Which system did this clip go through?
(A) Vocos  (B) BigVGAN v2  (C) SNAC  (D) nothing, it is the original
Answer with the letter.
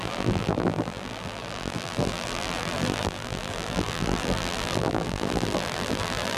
B